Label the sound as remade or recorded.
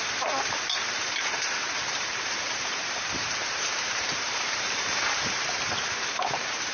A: remade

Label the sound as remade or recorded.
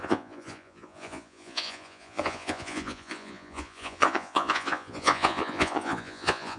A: remade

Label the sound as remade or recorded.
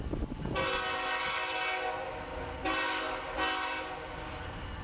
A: recorded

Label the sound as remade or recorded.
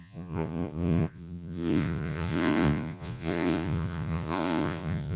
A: remade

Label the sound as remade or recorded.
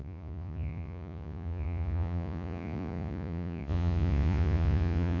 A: remade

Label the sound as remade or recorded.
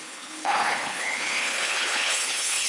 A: remade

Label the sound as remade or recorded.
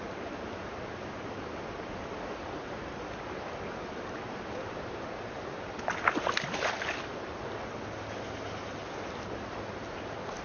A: recorded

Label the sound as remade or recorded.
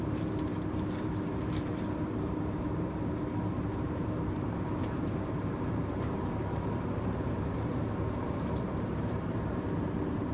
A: remade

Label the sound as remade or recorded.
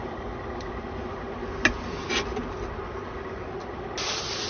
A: recorded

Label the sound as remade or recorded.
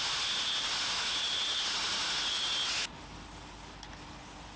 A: recorded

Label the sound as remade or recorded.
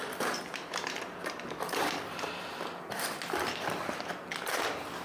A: remade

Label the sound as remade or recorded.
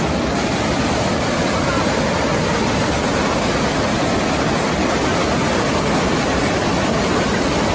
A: recorded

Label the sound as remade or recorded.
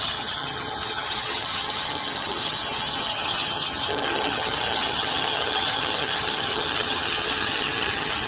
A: remade